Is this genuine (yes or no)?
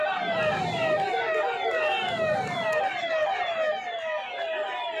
yes